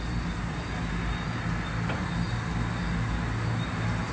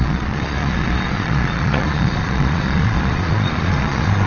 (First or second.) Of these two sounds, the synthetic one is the second